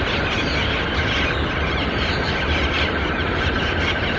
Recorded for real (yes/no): yes